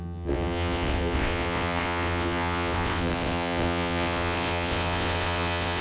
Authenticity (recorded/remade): remade